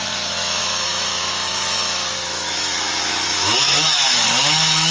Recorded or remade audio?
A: remade